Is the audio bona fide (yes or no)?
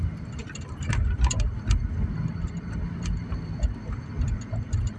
yes